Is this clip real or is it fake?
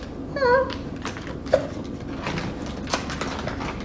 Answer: real